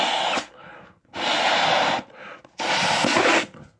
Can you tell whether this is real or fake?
real